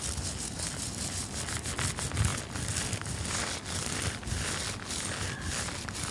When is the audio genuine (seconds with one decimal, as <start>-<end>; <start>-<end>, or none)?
0.0-6.1